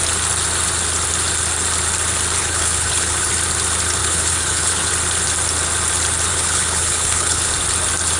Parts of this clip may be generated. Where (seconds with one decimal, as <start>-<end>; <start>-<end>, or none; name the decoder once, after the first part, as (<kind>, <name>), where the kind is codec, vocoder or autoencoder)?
2.4-3.3 (codec, HILCodec); 4.0-4.9; 6.3-7.5